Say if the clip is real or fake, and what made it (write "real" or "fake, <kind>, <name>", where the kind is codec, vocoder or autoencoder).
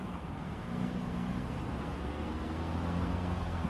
fake, codec, SNAC